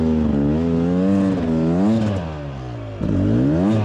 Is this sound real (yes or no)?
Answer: yes